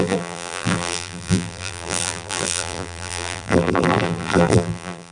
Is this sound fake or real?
fake